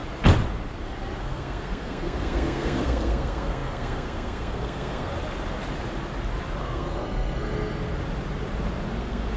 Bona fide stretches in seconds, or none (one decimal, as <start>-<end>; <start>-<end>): 0.0-1.2; 5.1-6.6; 7.8-9.0